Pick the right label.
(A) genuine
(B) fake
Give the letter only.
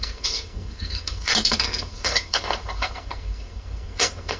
B